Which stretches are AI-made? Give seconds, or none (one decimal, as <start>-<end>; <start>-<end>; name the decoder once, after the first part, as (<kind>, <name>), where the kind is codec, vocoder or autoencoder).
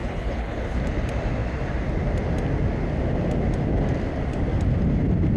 0.0-0.8 (codec, HILCodec)